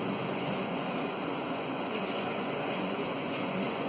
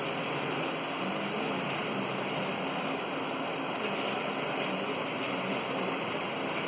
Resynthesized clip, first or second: first